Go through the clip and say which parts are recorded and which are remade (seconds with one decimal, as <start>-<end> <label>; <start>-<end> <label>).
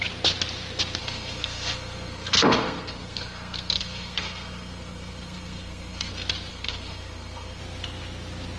0.0-1.0 recorded; 1.0-6.1 remade; 6.1-6.5 recorded; 6.5-7.6 remade; 7.6-8.6 recorded